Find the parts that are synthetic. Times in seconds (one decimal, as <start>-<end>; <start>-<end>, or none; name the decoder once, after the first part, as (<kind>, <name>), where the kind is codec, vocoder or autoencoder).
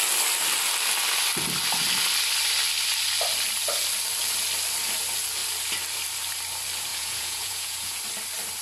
6.9-8.0 (vocoder, Vocos)